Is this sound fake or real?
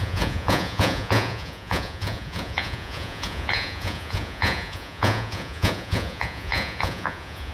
fake